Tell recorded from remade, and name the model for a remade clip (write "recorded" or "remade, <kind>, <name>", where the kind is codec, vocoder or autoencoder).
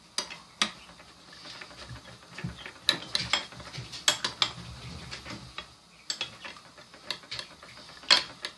recorded